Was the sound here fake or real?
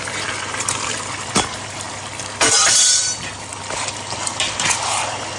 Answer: fake